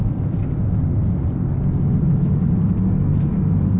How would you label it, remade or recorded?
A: recorded